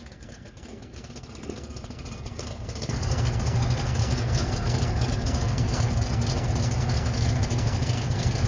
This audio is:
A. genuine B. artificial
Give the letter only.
B